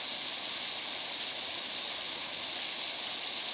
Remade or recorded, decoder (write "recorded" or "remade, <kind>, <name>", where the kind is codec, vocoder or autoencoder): recorded